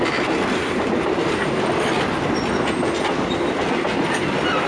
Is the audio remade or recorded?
recorded